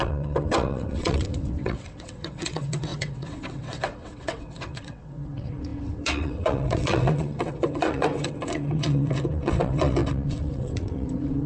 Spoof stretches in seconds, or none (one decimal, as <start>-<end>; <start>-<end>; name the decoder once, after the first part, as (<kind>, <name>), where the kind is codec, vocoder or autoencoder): 0.0-11.5 (vocoder, WaveNeXt)